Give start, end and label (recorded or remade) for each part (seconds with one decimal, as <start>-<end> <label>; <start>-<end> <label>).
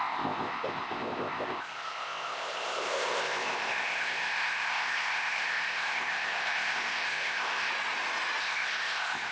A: 0.0-7.7 remade; 7.7-8.4 recorded; 8.4-9.3 remade